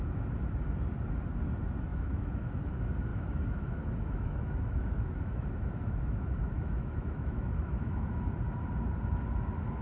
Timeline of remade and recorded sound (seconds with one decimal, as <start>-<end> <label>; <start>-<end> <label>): 0.0-1.9 recorded; 1.9-2.7 remade; 2.7-3.1 recorded; 3.1-8.2 remade; 8.2-9.8 recorded